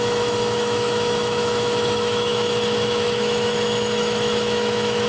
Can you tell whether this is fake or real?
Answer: fake